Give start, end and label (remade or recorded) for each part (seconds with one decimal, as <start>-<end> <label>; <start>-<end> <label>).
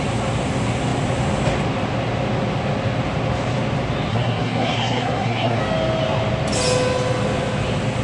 0.0-4.1 recorded; 4.1-5.6 remade; 5.6-8.0 recorded